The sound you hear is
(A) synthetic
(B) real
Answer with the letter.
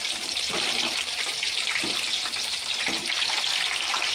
A